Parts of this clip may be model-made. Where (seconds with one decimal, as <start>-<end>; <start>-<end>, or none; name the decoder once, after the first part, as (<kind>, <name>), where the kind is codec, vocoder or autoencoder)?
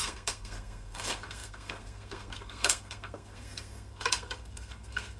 0.0-5.2 (codec, SNAC)